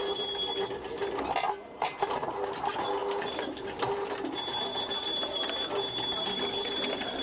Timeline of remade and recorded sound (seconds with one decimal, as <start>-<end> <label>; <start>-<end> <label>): 0.0-7.2 recorded